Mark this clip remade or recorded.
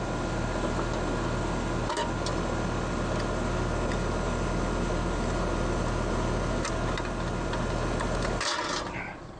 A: recorded